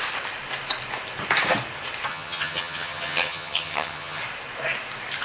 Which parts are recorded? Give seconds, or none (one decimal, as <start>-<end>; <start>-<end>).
0.0-2.1; 4.2-5.2

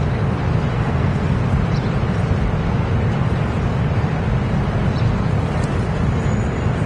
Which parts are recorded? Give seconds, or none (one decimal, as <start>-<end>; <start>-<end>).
0.0-0.7; 1.4-6.9

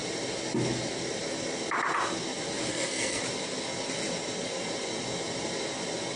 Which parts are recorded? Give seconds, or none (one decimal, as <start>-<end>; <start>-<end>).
0.0-2.7; 3.2-6.2

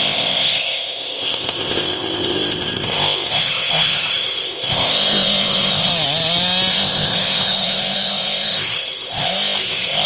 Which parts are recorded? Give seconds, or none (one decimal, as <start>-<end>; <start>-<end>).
5.9-6.7

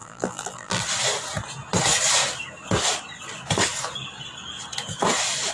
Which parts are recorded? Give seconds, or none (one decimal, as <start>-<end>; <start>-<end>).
0.8-5.5

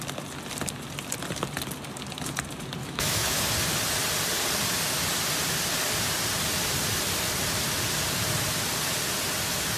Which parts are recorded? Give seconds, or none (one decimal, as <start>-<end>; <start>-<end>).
0.0-2.8; 3.5-9.8